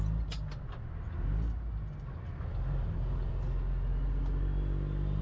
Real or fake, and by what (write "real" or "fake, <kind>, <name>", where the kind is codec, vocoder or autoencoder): real